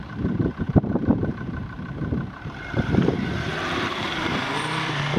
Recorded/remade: remade